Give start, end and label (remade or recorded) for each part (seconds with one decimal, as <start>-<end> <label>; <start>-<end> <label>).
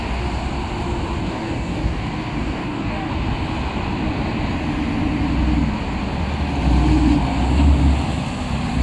0.0-1.2 recorded; 1.2-3.1 remade; 3.1-8.8 recorded